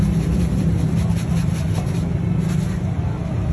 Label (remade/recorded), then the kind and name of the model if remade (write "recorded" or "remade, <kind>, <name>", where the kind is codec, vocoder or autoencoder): recorded